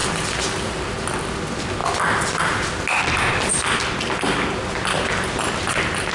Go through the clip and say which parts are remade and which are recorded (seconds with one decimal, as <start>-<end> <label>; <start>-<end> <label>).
0.0-6.1 recorded